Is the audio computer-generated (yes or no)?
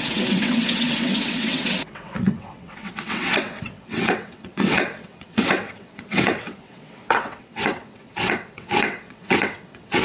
yes